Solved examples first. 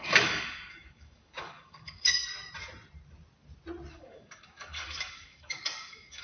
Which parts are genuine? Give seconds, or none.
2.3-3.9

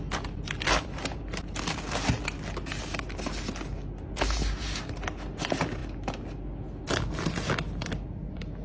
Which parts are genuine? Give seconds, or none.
0.0-8.6

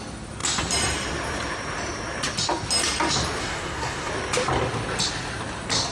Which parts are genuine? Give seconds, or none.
0.0-3.4; 4.1-5.9

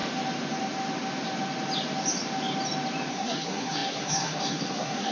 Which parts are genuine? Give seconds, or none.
0.0-3.1

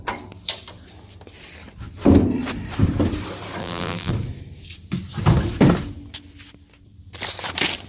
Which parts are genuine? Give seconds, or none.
0.0-3.6; 4.1-7.9

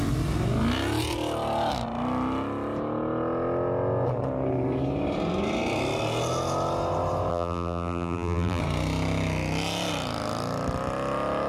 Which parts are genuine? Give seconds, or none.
0.0-7.3; 8.6-11.5

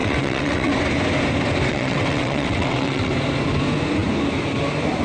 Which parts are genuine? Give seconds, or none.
0.7-1.7; 3.1-5.0

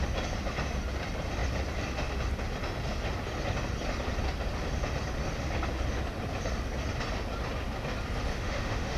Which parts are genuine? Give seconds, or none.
0.0-8.3